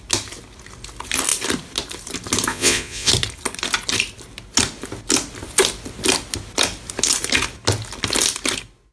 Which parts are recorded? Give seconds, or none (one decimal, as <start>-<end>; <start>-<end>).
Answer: 0.0-2.5; 3.1-8.9